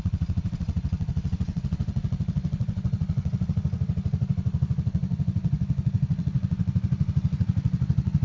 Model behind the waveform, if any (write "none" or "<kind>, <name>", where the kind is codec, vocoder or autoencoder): vocoder, WaveNeXt